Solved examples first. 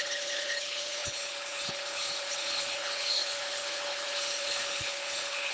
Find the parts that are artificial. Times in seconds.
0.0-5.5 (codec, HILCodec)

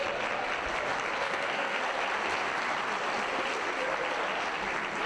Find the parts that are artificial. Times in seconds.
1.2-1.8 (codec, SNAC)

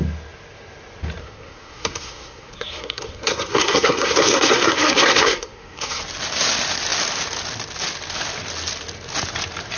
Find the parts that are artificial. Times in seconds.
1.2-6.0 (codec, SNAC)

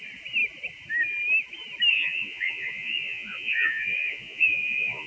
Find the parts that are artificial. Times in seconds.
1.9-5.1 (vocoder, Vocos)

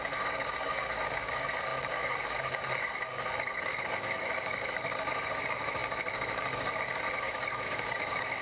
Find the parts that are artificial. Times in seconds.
0.0-8.4 (codec, DAC)

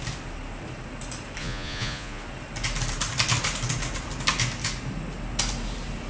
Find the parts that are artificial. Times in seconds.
1.4-2.2 (vocoder, Vocos)

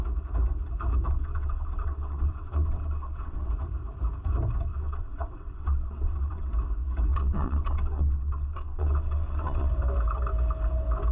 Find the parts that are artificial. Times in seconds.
1.1-3.5 (vocoder, WaveNeXt); 4.7-6.5; 7.1-9.7

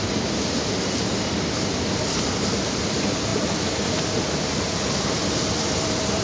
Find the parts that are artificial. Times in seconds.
3.3-5.2 (vocoder, BigVGAN v2)